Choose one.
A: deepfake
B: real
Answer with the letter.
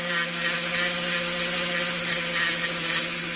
B